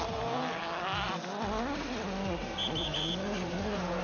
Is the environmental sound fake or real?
real